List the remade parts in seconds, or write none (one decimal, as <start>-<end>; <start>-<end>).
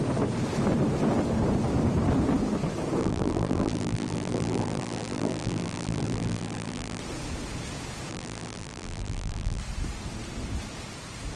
3.0-7.0; 8.1-9.6